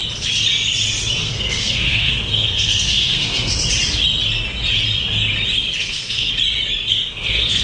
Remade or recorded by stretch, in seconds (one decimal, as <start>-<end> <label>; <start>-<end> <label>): 0.0-1.2 recorded; 1.2-3.5 remade; 3.5-5.8 recorded; 5.8-6.3 remade; 6.3-6.9 recorded; 6.9-7.6 remade